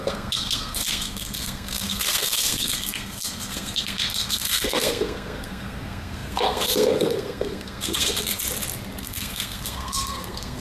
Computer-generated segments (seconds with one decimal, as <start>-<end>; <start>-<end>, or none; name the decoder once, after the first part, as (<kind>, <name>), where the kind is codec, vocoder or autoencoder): 0.0-8.4 (codec, SNAC); 9.0-10.6